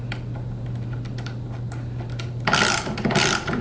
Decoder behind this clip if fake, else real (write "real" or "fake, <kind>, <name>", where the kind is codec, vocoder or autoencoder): fake, vocoder, BigVGAN v2